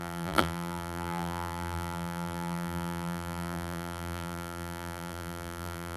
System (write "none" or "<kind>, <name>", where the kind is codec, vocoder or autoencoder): vocoder, BigVGAN v2